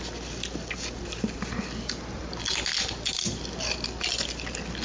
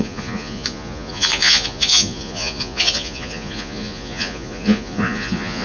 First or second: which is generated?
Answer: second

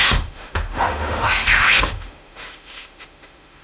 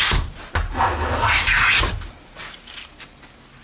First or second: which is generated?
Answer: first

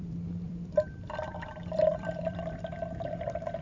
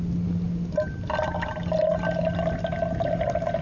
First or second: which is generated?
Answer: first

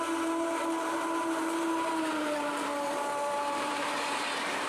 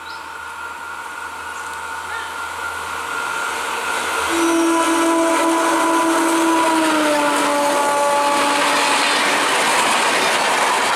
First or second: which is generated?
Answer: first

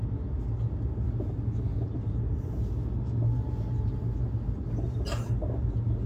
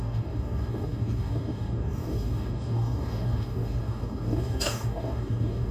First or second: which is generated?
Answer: second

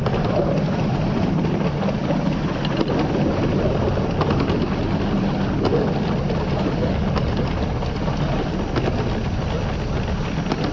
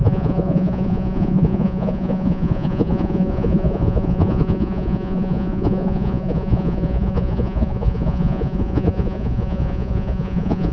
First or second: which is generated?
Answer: second